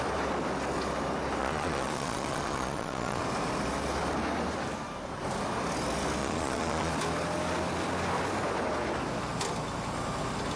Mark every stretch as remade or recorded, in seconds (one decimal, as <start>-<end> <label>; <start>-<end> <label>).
0.0-1.4 recorded; 1.4-3.2 remade; 3.2-6.2 recorded; 6.2-6.9 remade; 6.9-10.6 recorded